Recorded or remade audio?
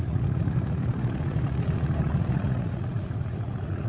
remade